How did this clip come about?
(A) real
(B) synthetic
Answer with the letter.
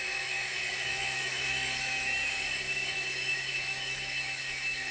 B